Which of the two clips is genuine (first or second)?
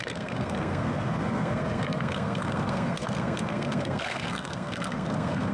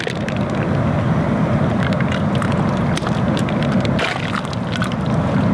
second